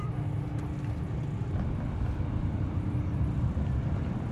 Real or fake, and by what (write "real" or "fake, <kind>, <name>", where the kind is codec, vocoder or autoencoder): real